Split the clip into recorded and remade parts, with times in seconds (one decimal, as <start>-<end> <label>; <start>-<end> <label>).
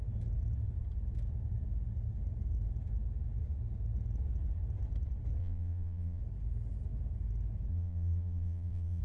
0.0-5.4 recorded; 5.4-6.2 remade; 6.2-7.7 recorded; 7.7-9.0 remade